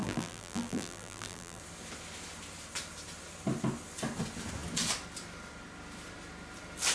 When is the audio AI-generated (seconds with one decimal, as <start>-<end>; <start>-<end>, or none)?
0.0-1.6